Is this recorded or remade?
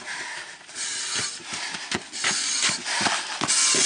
recorded